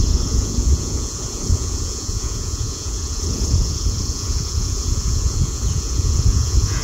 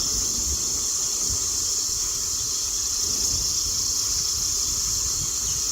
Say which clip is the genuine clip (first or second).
second